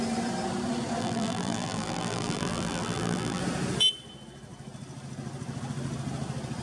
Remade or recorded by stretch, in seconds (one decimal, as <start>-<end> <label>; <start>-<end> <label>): 0.0-1.0 recorded; 1.0-3.4 remade; 3.4-6.6 recorded